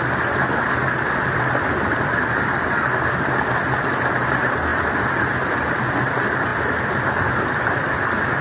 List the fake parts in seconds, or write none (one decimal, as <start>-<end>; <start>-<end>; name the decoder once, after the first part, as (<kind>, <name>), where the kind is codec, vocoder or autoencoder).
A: 4.7-5.2 (vocoder, BigVGAN v2); 6.5-8.4